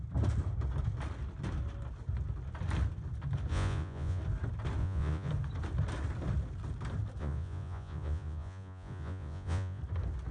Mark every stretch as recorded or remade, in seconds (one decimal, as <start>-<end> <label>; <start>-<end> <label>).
0.0-3.5 recorded; 3.5-4.2 remade; 4.2-4.8 recorded; 4.8-5.3 remade; 5.3-7.2 recorded; 7.2-9.8 remade; 9.8-10.3 recorded